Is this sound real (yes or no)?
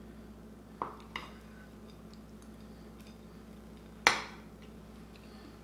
yes